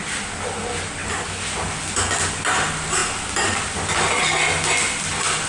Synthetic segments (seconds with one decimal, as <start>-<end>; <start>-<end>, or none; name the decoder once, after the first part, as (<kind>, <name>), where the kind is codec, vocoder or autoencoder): none